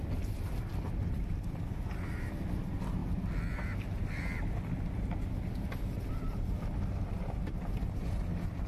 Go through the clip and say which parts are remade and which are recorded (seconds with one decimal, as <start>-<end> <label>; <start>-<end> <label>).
0.0-0.7 recorded; 0.7-1.6 remade; 1.6-8.7 recorded